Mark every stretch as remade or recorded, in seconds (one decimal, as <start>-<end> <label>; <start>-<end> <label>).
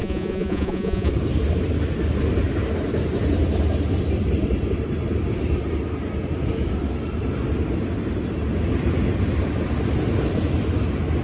0.0-1.1 remade; 1.1-11.2 recorded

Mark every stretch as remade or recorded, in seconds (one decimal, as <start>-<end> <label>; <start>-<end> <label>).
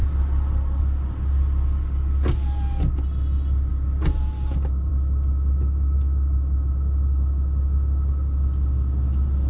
0.0-9.5 recorded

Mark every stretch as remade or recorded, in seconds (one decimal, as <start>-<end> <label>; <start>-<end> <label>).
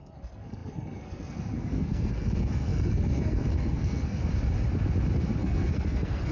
0.0-4.2 remade; 4.2-5.4 recorded; 5.4-6.3 remade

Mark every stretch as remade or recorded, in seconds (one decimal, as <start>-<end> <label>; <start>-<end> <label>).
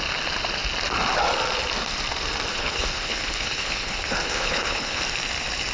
0.0-2.5 recorded; 2.5-5.0 remade; 5.0-5.7 recorded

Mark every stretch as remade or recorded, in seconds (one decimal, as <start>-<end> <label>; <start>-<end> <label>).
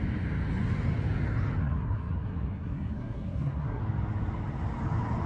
0.0-1.6 recorded; 1.6-3.8 remade; 3.8-5.3 recorded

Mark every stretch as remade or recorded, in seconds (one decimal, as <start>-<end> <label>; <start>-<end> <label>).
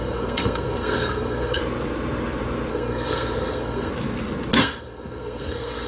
0.0-1.6 remade; 1.6-2.7 recorded; 2.7-3.9 remade; 3.9-4.6 recorded; 4.6-5.9 remade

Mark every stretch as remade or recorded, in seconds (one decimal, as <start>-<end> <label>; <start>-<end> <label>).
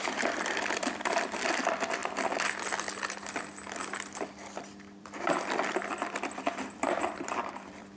0.0-2.0 remade; 2.0-5.0 recorded; 5.0-8.0 remade